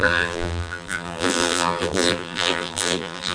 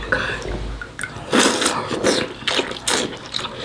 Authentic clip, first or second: second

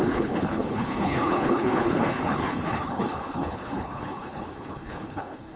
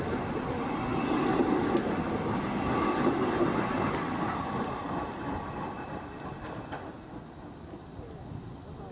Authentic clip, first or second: second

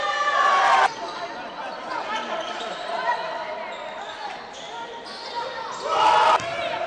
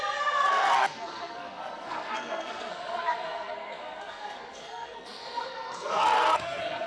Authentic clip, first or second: first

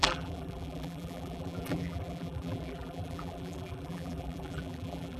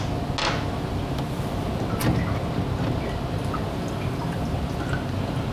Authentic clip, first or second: second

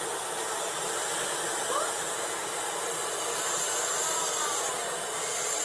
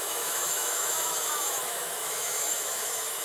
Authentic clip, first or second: first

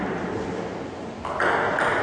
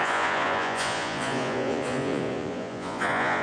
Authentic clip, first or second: first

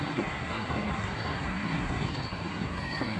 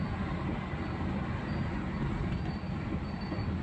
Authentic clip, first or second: second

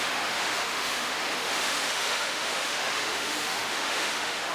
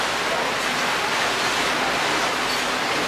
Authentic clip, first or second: second